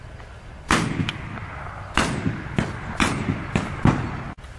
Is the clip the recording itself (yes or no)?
yes